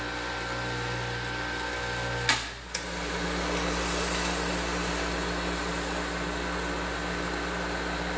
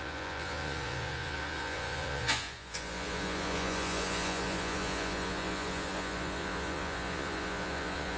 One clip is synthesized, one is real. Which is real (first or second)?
first